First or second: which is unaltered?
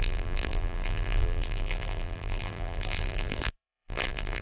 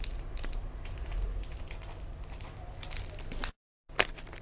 second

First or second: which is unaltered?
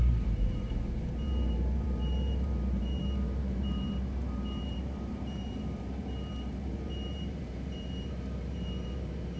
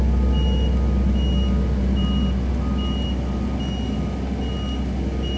second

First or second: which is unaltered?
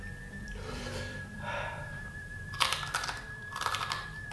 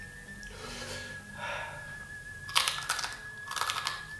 second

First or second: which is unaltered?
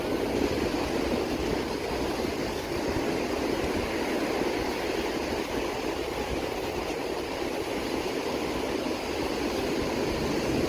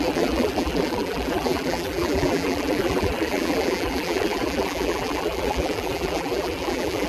first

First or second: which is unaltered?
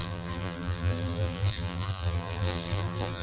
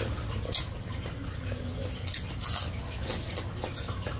second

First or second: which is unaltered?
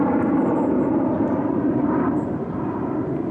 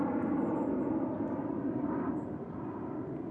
second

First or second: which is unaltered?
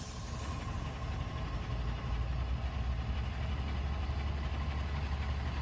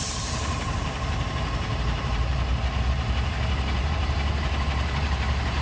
first